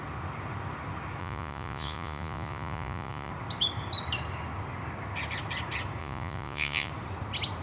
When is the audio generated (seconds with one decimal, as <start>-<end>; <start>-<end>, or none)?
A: 1.2-3.3; 6.0-6.9